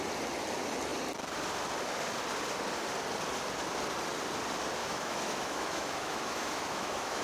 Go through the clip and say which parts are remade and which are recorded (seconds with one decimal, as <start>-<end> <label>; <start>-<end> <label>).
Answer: 0.0-4.8 recorded; 4.8-7.2 remade